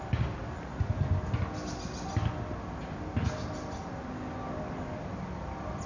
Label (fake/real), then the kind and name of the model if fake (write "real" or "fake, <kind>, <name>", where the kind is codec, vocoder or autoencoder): real